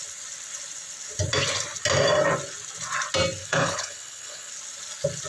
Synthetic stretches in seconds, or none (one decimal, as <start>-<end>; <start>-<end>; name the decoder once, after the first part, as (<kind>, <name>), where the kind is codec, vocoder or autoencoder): 3.4-4.5 (codec, HILCodec)